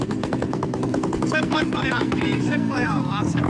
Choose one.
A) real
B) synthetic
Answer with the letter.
B